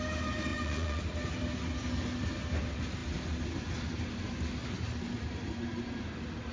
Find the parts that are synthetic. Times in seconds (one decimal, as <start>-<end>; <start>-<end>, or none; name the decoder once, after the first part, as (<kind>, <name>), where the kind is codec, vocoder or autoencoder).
0.5-1.0 (vocoder, Vocos)